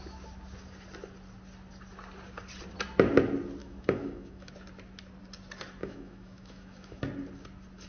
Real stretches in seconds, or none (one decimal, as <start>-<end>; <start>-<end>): 0.0-3.6; 4.5-5.8; 7.0-7.9